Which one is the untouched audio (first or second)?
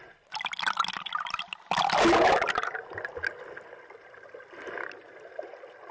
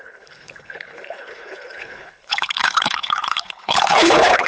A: first